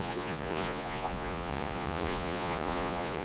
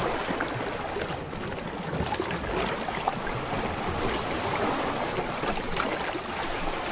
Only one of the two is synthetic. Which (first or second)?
first